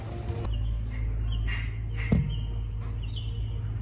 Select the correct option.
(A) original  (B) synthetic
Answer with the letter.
A